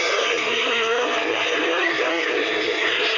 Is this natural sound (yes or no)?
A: no